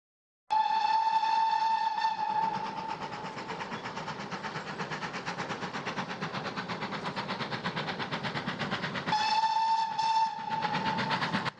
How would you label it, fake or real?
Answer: real